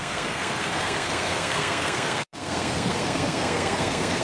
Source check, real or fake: fake